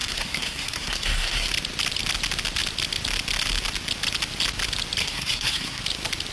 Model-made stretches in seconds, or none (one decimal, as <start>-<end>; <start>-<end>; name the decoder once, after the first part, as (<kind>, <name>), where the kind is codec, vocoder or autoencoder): 0.0-1.5 (codec, SNAC); 5.0-5.8